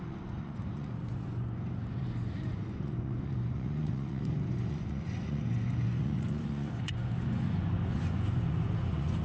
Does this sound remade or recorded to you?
remade